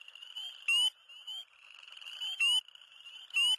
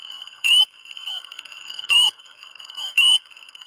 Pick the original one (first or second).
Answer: first